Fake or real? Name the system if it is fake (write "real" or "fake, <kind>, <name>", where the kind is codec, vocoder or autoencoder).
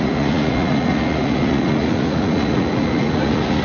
fake, vocoder, Vocos